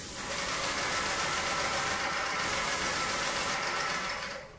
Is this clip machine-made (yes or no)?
no